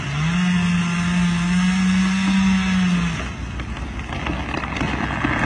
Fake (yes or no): no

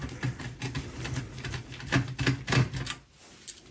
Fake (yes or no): no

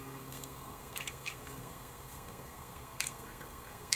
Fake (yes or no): yes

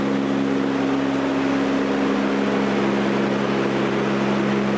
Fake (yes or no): no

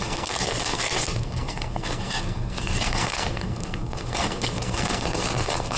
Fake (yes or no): yes